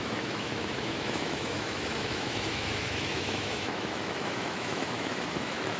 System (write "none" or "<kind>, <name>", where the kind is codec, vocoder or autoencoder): autoencoder, DAC-VAE